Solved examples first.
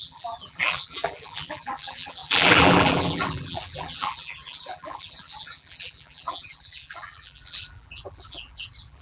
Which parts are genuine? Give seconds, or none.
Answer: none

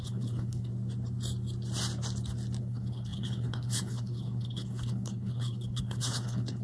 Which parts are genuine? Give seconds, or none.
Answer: 0.7-2.6

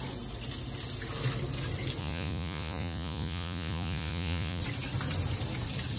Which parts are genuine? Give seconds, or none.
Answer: 0.0-2.0; 4.6-6.0

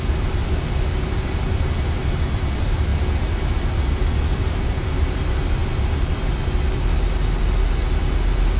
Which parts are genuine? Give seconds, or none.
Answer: 0.0-8.6

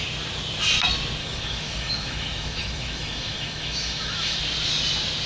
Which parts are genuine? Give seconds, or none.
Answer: 0.0-1.2; 4.4-5.3

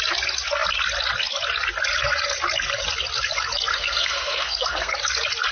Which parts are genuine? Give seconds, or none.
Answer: 0.0-3.7; 4.9-5.5

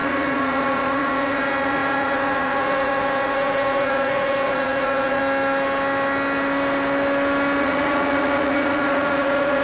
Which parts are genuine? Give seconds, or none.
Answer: 5.2-7.6